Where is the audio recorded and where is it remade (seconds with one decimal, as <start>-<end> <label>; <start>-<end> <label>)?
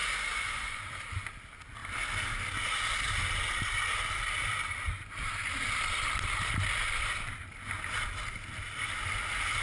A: 0.0-0.8 remade; 0.8-9.6 recorded